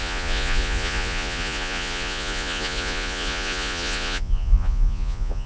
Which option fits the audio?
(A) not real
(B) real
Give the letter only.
A